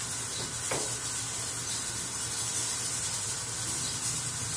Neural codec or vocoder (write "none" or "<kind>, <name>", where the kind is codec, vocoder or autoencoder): none